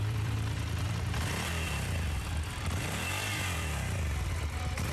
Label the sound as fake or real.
fake